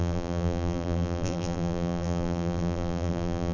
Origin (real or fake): fake